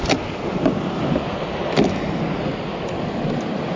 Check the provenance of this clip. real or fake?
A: real